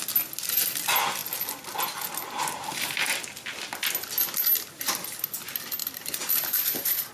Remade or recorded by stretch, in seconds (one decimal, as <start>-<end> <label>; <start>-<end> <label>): 0.0-5.8 recorded; 5.8-7.1 remade